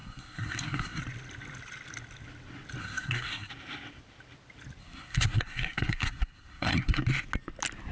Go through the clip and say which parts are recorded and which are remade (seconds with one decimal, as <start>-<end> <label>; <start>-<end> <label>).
0.0-1.0 remade; 1.0-2.8 recorded; 2.8-3.5 remade; 3.5-4.8 recorded; 4.8-7.0 remade; 7.0-7.9 recorded